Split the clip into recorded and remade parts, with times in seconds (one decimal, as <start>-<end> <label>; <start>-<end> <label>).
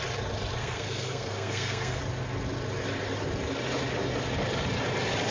0.0-0.6 recorded; 0.6-2.0 remade; 2.0-5.3 recorded